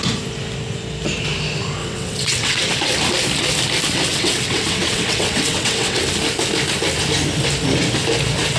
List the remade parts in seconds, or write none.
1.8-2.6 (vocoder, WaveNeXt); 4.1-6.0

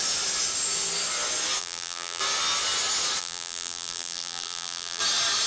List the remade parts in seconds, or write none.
1.6-2.2 (vocoder, BigVGAN v2); 3.2-5.0

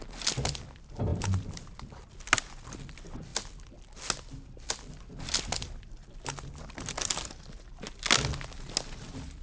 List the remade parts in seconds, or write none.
3.3-3.8 (vocoder, BigVGAN v2)

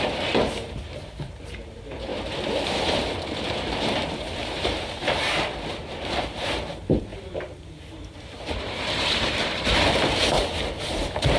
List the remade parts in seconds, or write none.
0.0-5.0 (vocoder, BigVGAN v2); 5.7-11.4

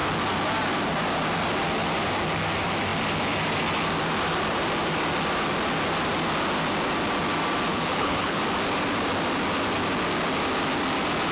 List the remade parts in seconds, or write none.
7.7-8.4 (codec, HILCodec)